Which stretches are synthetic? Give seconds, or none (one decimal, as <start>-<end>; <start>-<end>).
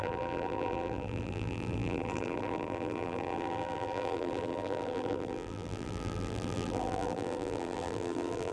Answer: 0.0-8.5